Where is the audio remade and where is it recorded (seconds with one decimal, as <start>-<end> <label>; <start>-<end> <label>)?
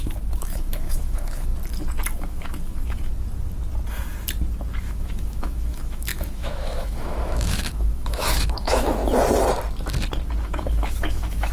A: 0.0-1.5 remade; 1.5-2.2 recorded; 2.2-3.1 remade; 3.1-4.8 recorded; 4.8-9.0 remade; 9.0-10.4 recorded; 10.4-11.5 remade